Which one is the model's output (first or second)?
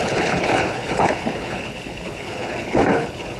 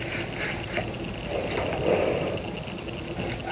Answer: first